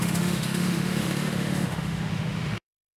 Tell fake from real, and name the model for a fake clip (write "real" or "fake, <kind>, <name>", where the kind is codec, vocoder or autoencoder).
fake, autoencoder, DAC-VAE